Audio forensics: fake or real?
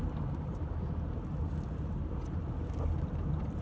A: real